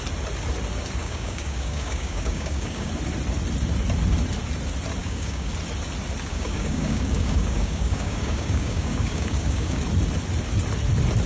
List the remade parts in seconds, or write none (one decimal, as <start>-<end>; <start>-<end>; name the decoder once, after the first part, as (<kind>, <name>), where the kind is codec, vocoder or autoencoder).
1.0-2.9 (codec, DAC); 5.0-5.5; 6.3-9.8